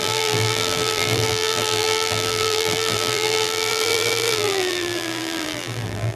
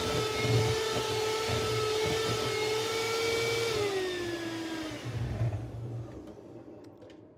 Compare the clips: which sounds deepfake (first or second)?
first